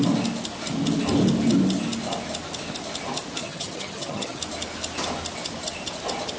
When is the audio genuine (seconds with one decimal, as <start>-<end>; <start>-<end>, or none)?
0.0-3.4; 4.4-6.4